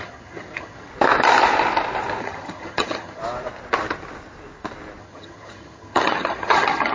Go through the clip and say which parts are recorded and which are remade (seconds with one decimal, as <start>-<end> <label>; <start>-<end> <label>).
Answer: 0.0-0.9 remade; 0.9-2.2 recorded; 2.2-3.2 remade; 3.2-5.0 recorded; 5.0-6.9 remade